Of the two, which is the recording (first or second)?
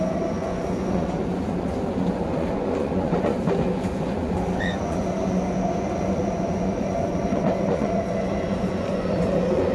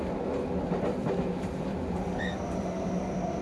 second